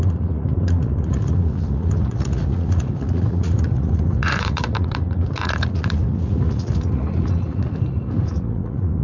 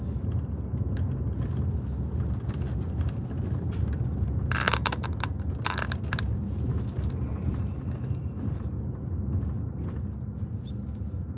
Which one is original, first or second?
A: second